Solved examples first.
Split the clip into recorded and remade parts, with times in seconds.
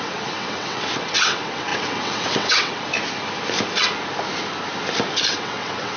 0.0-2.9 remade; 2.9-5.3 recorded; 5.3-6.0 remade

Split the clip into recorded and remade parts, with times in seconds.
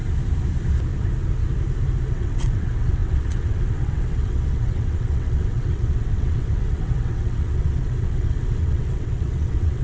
0.0-2.1 recorded; 2.1-9.8 remade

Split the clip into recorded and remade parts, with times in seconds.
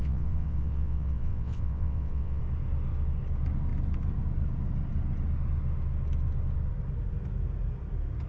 0.0-2.4 remade; 2.4-8.3 recorded